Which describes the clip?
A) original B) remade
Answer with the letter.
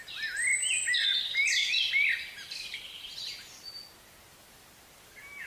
A